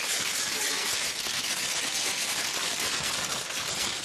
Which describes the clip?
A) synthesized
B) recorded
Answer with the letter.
A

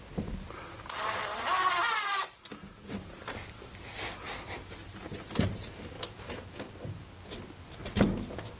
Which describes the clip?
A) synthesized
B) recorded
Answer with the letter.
B